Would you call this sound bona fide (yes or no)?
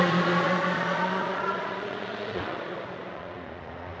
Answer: no